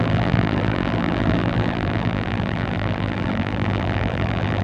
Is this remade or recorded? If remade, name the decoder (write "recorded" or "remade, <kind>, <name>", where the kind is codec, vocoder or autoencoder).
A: remade, vocoder, BigVGAN v2